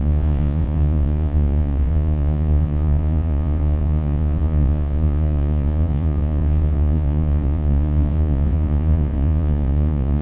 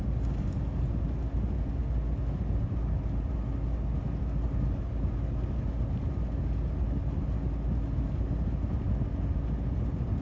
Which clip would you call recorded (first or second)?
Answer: second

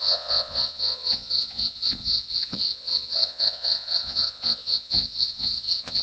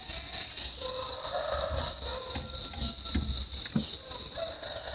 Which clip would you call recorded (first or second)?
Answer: second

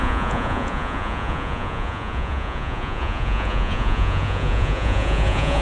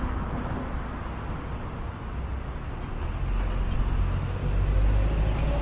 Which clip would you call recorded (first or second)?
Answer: second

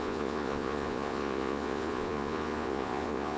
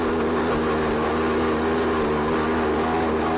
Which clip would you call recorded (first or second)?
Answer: second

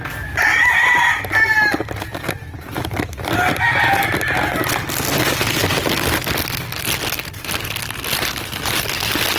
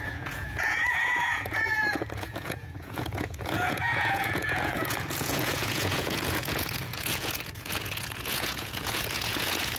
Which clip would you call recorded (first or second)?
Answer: first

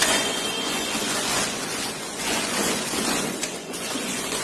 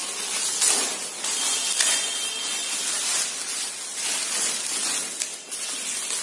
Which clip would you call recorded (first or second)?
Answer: second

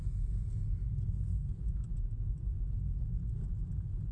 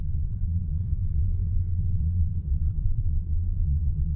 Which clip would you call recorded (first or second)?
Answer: first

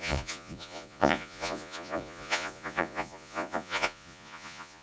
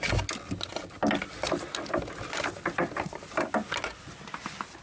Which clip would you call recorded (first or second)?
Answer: second